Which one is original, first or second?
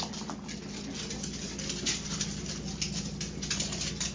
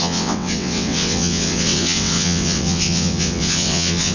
first